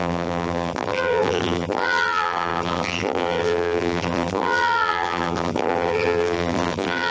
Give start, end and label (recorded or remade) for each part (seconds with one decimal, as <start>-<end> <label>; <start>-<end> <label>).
0.0-7.1 remade